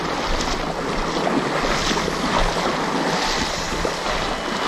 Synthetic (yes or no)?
no